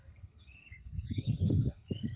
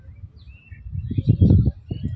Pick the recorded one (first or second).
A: second